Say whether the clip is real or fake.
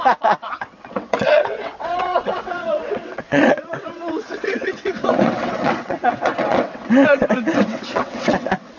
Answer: fake